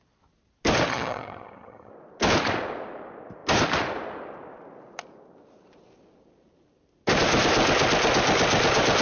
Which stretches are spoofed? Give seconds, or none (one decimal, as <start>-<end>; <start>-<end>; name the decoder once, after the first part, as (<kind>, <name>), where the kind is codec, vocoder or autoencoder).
0.9-1.9 (vocoder, HiFi-GAN)